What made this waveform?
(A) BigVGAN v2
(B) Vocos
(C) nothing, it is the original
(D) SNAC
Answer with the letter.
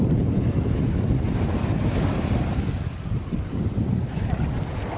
C